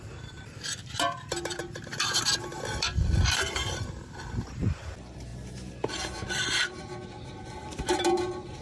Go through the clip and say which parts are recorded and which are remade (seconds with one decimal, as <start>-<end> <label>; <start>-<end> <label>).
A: 0.0-1.6 remade; 1.6-3.0 recorded; 3.0-8.6 remade